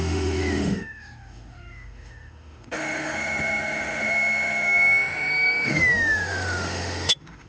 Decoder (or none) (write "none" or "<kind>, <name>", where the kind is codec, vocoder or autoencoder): autoencoder, DAC-VAE